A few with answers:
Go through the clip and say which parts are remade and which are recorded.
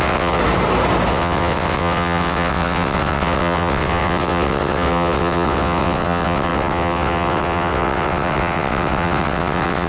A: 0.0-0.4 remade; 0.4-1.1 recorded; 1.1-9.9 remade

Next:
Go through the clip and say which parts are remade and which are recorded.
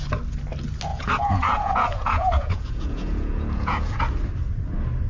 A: 0.0-0.9 recorded; 0.9-4.0 remade; 4.0-5.1 recorded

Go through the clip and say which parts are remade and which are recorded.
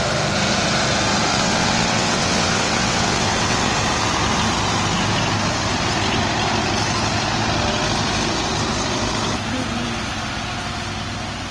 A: 0.0-1.3 recorded; 1.3-3.7 remade; 3.7-11.5 recorded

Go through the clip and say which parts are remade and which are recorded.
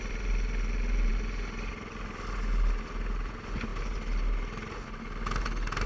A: 0.0-5.9 recorded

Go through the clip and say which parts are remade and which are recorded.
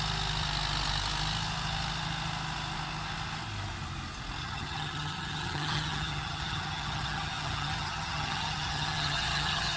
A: 0.0-4.4 recorded; 4.4-9.8 remade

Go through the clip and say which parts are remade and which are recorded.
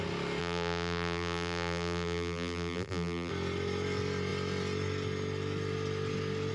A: 0.0-0.4 recorded; 0.4-3.3 remade; 3.3-6.5 recorded